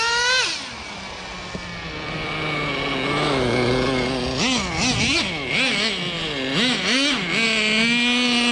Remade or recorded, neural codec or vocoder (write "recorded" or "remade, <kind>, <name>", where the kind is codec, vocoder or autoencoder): recorded